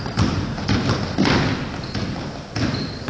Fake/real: real